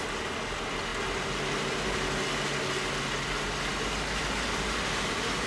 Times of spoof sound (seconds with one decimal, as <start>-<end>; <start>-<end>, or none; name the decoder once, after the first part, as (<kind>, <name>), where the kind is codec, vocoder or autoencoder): none